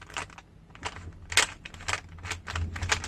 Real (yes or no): yes